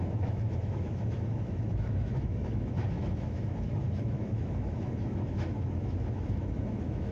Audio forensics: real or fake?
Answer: fake